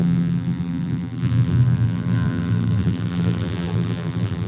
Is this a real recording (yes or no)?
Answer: no